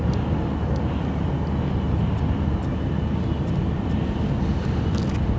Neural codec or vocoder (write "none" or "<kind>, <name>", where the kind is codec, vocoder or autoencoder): none